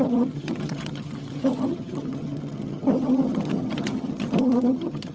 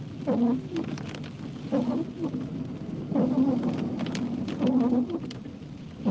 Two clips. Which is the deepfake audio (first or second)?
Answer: first